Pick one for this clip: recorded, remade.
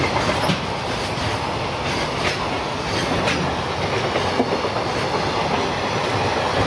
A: recorded